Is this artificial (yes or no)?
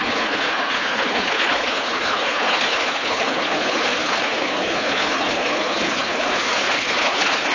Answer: yes